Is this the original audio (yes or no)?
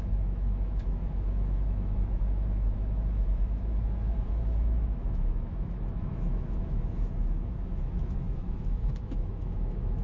no